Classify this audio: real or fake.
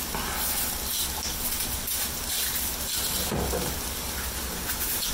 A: real